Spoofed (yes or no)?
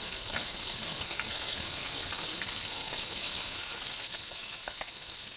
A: yes